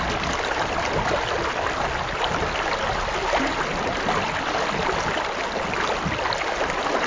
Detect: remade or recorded recorded